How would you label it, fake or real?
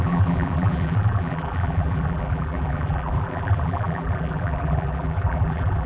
fake